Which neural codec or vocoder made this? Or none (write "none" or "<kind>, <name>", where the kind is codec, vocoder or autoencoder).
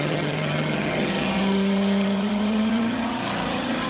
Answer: vocoder, HiFi-GAN